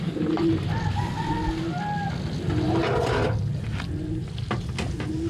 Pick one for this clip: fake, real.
real